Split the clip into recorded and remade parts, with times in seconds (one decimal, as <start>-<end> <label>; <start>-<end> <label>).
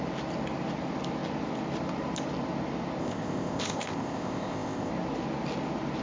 0.0-3.0 recorded; 3.0-4.9 remade; 4.9-6.0 recorded